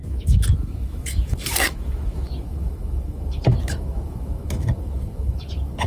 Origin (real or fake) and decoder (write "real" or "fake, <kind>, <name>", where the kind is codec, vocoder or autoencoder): fake, autoencoder, DAC-VAE